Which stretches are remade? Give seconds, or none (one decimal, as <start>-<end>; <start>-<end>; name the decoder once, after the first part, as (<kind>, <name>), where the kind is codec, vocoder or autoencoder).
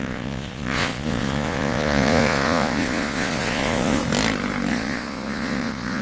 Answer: 0.0-4.0 (vocoder, Vocos); 4.7-6.0